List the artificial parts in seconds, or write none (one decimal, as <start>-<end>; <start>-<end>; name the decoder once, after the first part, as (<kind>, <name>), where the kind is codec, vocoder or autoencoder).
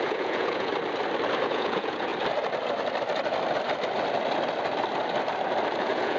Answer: 0.0-0.7 (vocoder, Vocos); 1.4-2.1; 5.8-6.2